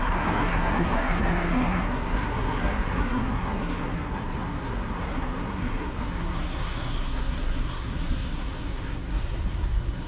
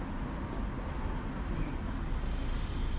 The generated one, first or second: first